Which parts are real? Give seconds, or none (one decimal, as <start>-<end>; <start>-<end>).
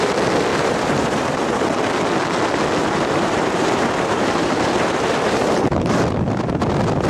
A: 0.0-0.5; 1.5-2.8; 6.0-7.1